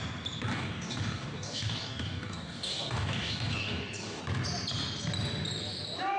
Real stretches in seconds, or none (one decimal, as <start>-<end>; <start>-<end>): 0.0-0.5; 4.2-6.2